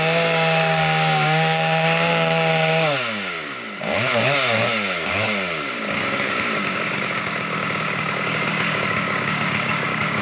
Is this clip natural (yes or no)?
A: no